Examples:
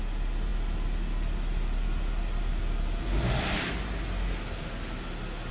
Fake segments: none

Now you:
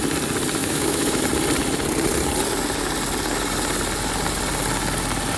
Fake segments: 0.6-1.2 (autoencoder, DAC-VAE)

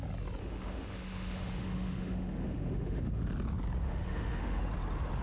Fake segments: 0.4-3.2 (autoencoder, DAC-VAE); 3.8-4.6

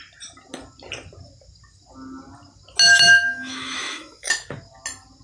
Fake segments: 2.9-4.3 (autoencoder, DAC-VAE)